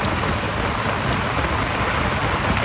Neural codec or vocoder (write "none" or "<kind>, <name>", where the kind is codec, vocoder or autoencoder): none